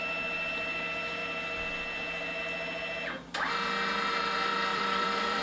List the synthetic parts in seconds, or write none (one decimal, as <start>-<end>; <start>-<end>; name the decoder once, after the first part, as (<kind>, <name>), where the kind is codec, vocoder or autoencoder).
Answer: 4.7-5.4 (vocoder, BigVGAN v2)